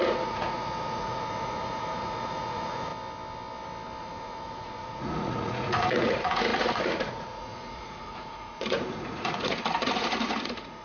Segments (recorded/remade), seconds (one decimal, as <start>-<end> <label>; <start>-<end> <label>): 0.0-2.9 remade; 2.9-4.0 recorded; 4.0-10.8 remade